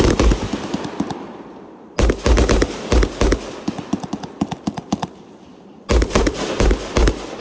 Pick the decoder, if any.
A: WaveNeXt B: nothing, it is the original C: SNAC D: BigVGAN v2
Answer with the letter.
B